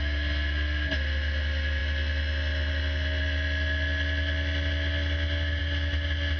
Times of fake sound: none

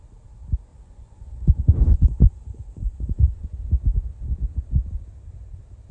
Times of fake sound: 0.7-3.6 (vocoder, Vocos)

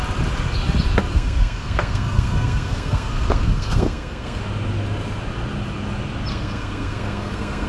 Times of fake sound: 1.1-4.4 (codec, SNAC); 6.3-7.7

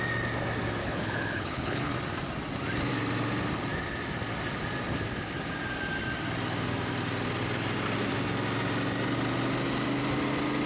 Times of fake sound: 0.8-1.9 (codec, HILCodec)

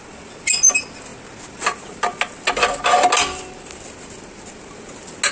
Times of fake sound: none

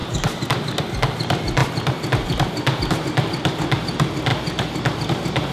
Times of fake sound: none

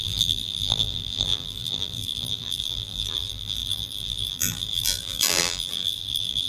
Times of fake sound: 0.0-6.5 (vocoder, BigVGAN v2)

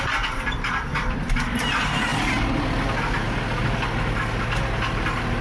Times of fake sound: none